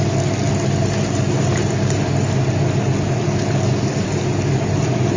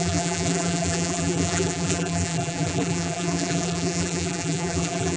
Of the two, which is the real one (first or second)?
first